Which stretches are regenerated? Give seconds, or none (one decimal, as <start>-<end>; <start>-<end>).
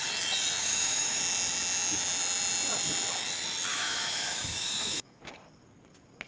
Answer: 0.6-1.2; 3.7-5.2